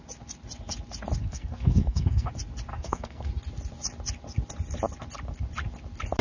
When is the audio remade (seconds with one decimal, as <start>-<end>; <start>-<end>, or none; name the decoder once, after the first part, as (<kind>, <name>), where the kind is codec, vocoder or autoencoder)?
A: 1.2-2.3 (codec, SNAC); 2.7-3.3